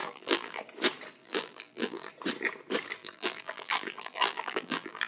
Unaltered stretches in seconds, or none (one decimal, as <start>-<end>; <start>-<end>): 0.6-1.2; 2.1-3.0